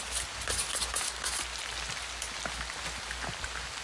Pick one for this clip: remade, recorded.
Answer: recorded